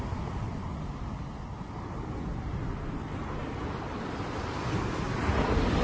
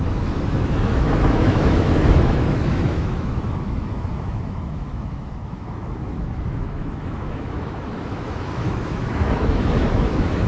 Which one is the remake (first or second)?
second